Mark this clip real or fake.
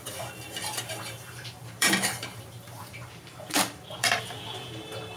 fake